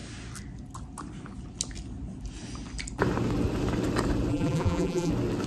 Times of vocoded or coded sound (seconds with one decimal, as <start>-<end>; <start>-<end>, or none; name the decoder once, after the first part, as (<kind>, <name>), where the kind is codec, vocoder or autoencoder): 4.3-5.1 (vocoder, BigVGAN v2)